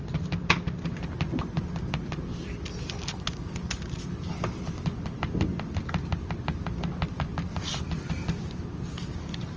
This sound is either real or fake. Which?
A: real